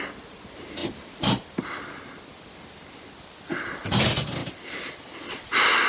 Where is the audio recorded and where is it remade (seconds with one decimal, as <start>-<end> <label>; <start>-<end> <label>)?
0.0-5.9 recorded